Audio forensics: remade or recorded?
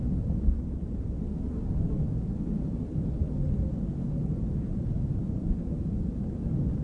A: recorded